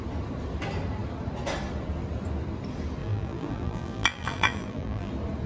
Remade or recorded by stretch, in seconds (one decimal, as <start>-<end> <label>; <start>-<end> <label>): 0.0-3.0 recorded; 3.0-5.1 remade; 5.1-5.5 recorded